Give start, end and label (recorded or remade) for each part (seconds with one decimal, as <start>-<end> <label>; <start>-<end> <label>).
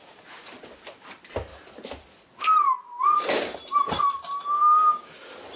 0.0-5.6 recorded